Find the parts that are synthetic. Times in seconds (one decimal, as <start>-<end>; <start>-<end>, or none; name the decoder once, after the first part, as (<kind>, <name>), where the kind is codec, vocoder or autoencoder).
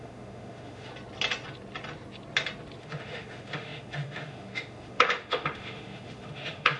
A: 0.0-0.9 (autoencoder, DAC-VAE); 2.8-6.8